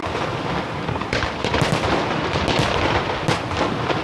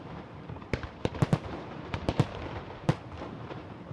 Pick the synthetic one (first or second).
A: second